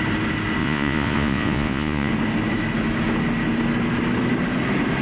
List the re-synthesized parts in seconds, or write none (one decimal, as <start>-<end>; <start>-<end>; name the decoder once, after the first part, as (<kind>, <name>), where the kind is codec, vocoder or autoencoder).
0.6-2.1 (vocoder, Vocos)